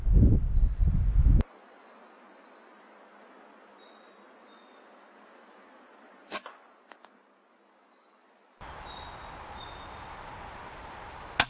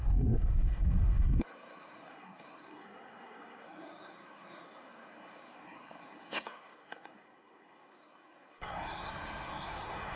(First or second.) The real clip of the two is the first